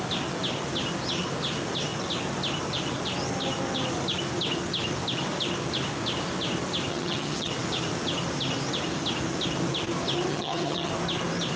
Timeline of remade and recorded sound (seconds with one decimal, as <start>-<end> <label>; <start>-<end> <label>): 0.0-6.9 recorded; 6.9-7.5 remade; 7.5-10.3 recorded; 10.3-10.9 remade; 10.9-11.6 recorded

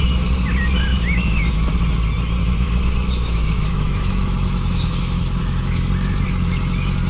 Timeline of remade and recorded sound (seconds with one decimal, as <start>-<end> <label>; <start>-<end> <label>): 0.0-0.9 recorded; 0.9-1.7 remade; 1.7-2.4 recorded; 2.4-5.9 remade; 5.9-7.1 recorded

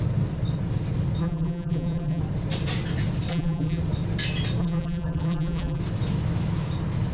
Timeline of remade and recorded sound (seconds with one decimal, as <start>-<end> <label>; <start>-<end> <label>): 0.0-1.2 recorded; 1.2-2.2 remade; 2.2-3.3 recorded; 3.3-3.8 remade; 3.8-4.6 recorded; 4.6-5.8 remade; 5.8-7.1 recorded

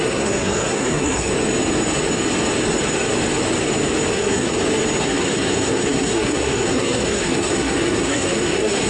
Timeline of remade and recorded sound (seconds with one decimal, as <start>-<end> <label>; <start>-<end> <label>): 0.0-1.3 remade; 1.3-4.1 recorded; 4.1-4.5 remade; 4.5-5.0 recorded; 5.0-8.9 remade